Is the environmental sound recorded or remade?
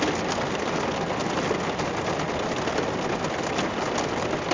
recorded